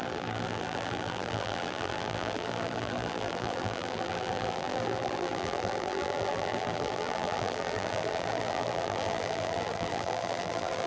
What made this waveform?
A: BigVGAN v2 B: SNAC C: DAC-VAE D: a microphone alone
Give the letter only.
A